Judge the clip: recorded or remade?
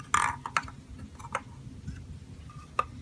recorded